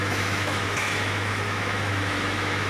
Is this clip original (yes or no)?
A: no